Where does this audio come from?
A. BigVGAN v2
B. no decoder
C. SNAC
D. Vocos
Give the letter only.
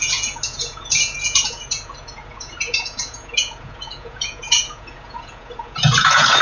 D